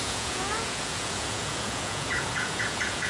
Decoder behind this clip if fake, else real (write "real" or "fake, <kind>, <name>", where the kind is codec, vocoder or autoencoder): fake, vocoder, Vocos